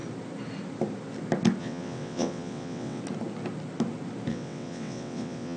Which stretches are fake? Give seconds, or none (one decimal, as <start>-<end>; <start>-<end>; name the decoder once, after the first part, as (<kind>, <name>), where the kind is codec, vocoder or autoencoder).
1.6-3.0 (vocoder, WaveNeXt); 4.3-5.6